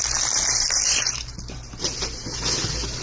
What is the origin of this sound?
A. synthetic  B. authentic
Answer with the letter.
B